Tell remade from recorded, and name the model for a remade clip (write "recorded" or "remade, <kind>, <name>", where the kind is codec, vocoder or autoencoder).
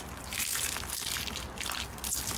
recorded